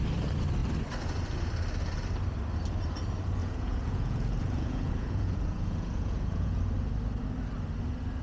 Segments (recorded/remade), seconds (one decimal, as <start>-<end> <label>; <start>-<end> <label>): 0.0-3.4 recorded; 3.4-6.6 remade; 6.6-8.2 recorded